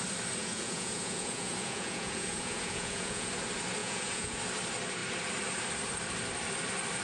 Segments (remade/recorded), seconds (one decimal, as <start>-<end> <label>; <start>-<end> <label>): 0.0-0.4 recorded; 0.4-3.3 remade; 3.3-3.8 recorded; 3.8-4.4 remade; 4.4-7.0 recorded